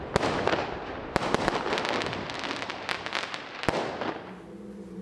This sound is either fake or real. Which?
real